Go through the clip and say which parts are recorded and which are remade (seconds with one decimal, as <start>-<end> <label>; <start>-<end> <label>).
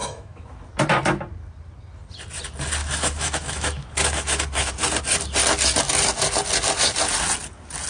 0.0-0.6 remade; 0.6-2.8 recorded; 2.8-4.7 remade; 4.7-7.9 recorded